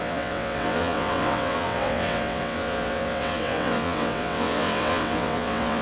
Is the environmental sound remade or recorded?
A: remade